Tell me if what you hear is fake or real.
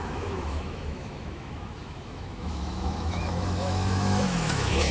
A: fake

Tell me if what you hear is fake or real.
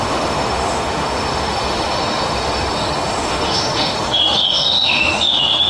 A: fake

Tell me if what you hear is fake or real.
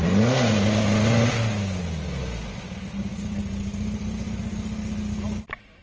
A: real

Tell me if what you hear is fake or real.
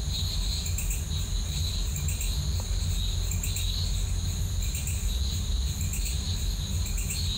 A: real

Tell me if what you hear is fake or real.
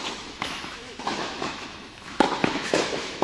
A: fake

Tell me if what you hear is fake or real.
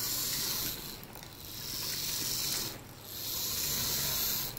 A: real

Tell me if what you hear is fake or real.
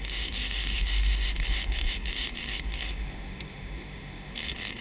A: fake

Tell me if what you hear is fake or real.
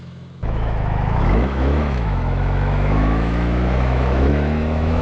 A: fake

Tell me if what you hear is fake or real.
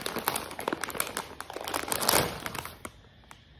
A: real